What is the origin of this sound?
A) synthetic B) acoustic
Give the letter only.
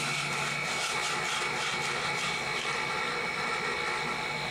B